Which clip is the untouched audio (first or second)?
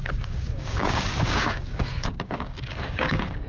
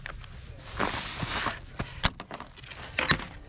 second